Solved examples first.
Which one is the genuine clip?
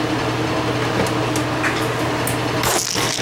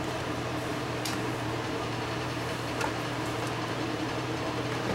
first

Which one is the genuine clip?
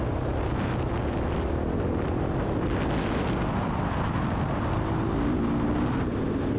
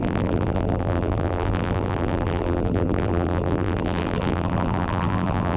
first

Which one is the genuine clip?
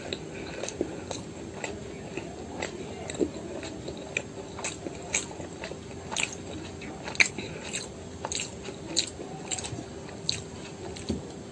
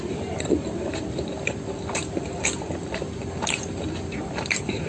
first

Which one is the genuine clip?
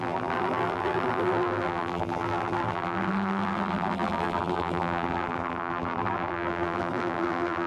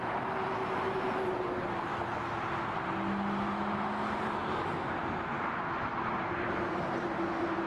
second